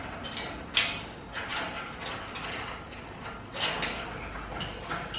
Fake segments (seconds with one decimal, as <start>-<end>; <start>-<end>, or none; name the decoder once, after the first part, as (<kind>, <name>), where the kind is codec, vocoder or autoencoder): none